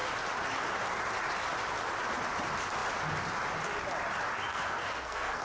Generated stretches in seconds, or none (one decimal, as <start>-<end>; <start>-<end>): 4.5-5.4